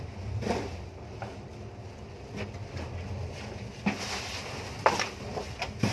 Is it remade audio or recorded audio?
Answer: recorded